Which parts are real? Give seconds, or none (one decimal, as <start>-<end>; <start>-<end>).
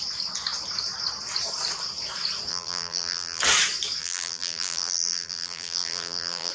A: 0.0-2.5; 3.4-4.0